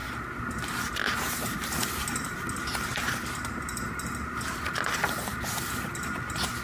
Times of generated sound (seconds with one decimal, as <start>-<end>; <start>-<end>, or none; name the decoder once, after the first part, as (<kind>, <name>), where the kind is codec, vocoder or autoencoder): none